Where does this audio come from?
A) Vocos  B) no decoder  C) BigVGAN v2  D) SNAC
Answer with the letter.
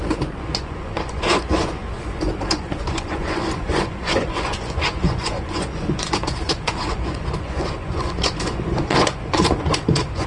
A